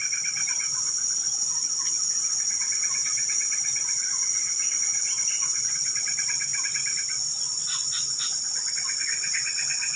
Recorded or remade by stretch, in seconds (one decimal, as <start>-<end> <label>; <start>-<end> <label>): 0.0-10.0 recorded